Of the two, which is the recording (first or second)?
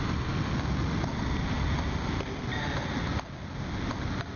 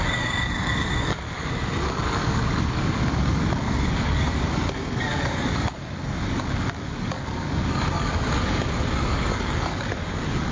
first